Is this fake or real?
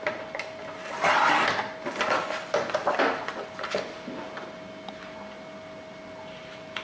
real